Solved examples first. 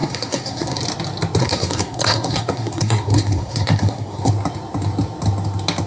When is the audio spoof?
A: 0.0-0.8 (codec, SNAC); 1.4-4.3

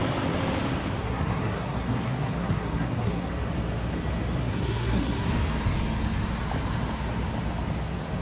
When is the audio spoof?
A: 1.0-3.3 (codec, SNAC); 4.4-5.3

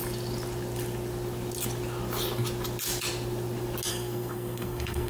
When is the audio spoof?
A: 3.9-5.1 (codec, SNAC)

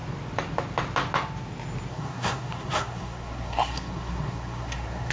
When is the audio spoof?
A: 1.9-5.1 (codec, SNAC)